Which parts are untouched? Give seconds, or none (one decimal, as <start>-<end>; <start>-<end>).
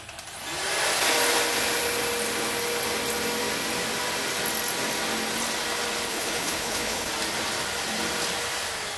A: 0.0-6.1; 7.1-9.0